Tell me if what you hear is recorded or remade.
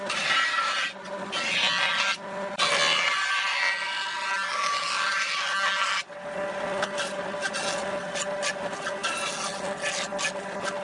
recorded